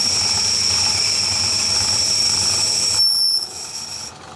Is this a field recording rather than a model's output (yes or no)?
yes